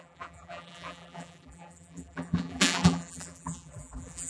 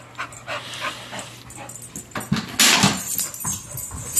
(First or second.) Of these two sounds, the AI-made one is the first